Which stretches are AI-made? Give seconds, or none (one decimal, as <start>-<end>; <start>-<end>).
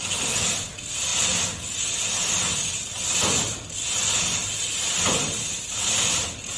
none